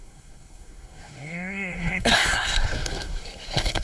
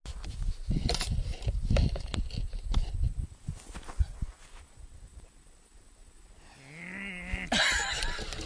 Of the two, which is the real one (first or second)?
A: second